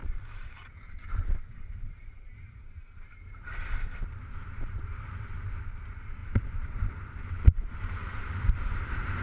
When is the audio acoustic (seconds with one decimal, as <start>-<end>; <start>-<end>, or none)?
none